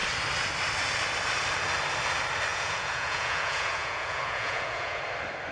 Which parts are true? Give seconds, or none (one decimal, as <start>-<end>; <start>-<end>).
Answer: 0.0-2.5; 5.0-5.5